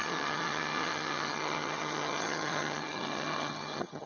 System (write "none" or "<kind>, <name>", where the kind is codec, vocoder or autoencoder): vocoder, HiFi-GAN